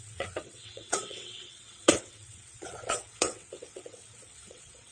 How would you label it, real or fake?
fake